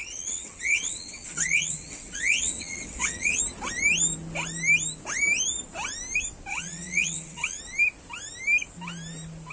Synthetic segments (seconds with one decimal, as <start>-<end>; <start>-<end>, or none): 0.0-3.4; 6.5-7.6